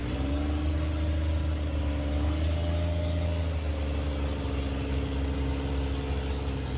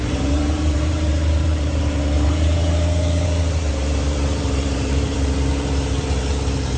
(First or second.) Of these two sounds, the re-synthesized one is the second